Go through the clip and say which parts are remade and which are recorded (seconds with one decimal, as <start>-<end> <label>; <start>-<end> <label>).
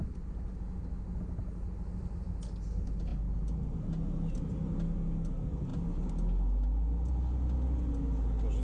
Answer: 0.0-8.6 recorded